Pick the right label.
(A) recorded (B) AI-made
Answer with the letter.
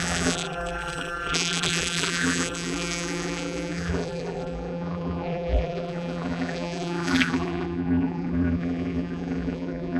B